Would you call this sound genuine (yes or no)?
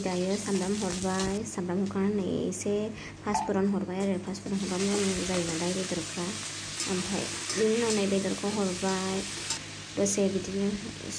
yes